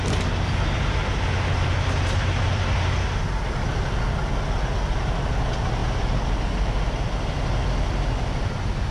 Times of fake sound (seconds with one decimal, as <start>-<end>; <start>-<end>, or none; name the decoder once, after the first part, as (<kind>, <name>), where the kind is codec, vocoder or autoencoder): none